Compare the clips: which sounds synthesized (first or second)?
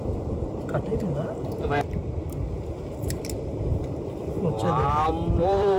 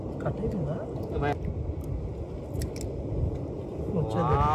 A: first